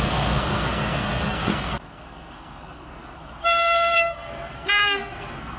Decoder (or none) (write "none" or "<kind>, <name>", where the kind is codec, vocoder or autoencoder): codec, SNAC